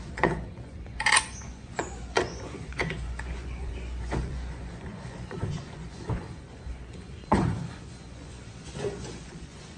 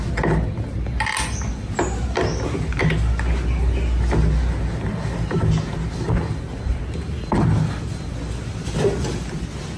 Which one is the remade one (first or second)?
first